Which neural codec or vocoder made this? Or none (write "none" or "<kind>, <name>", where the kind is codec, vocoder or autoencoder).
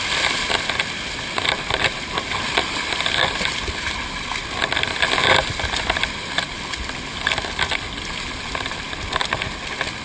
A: none